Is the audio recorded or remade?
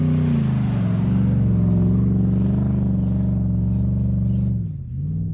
recorded